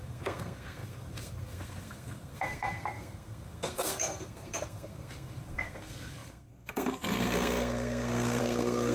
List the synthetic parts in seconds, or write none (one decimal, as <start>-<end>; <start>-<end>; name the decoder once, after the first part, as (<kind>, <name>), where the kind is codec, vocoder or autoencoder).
0.0-8.9 (codec, SNAC)